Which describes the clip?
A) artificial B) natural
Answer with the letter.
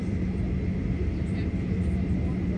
B